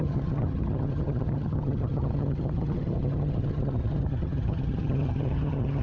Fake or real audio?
fake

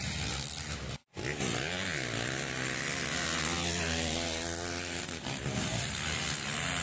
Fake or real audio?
real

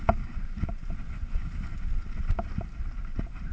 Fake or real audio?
real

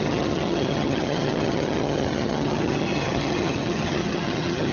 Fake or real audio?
fake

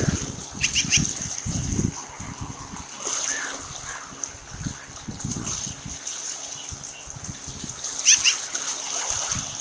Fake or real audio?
real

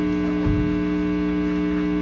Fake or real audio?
real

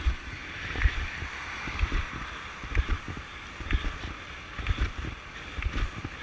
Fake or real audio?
real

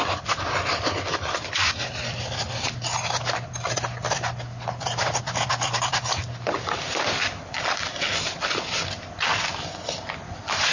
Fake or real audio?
real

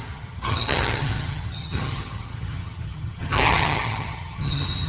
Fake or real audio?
fake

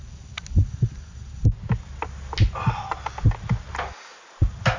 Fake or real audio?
real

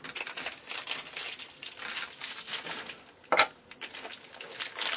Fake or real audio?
real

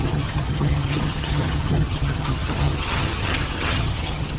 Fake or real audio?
fake